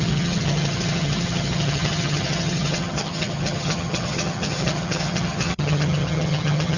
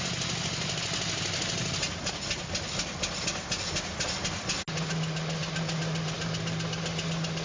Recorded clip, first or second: second